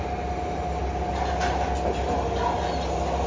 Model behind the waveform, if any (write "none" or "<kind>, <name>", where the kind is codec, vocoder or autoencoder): none